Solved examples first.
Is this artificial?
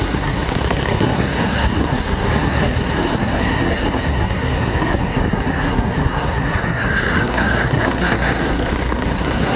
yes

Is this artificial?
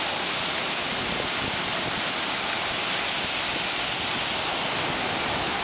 no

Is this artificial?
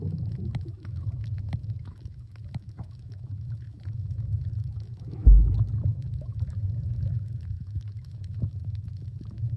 yes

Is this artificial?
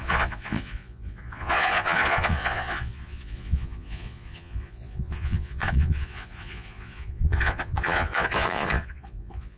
yes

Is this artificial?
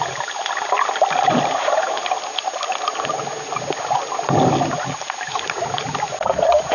no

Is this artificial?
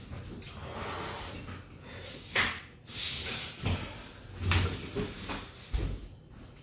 no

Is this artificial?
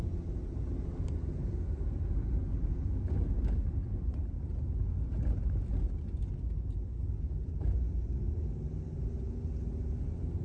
no